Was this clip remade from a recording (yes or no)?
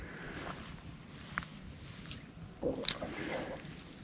no